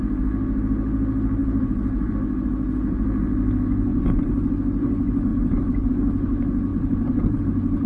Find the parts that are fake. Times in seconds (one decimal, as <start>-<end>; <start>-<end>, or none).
1.4-2.1; 3.9-4.5; 5.3-5.9; 6.7-7.4